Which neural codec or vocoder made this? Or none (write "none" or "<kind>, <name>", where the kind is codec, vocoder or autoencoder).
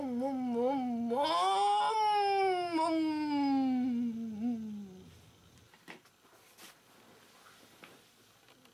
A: none